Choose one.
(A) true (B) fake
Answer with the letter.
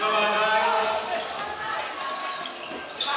A